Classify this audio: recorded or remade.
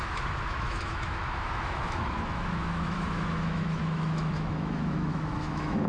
remade